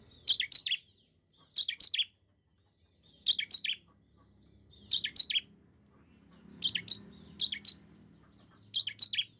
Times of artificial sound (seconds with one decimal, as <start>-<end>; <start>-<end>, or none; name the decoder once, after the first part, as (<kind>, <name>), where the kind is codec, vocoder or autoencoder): 0.6-1.4 (vocoder, BigVGAN v2)